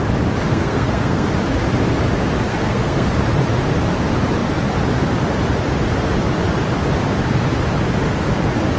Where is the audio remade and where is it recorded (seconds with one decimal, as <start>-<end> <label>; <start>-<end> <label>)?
0.0-0.5 recorded; 0.5-1.3 remade; 1.3-2.5 recorded; 2.5-3.1 remade; 3.1-8.8 recorded